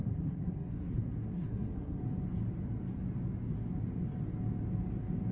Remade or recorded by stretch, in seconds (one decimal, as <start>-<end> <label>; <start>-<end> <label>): 0.0-2.0 remade; 2.0-5.3 recorded